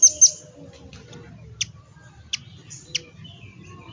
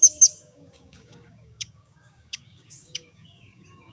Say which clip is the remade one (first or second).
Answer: second